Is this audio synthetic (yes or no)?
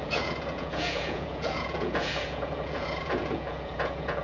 yes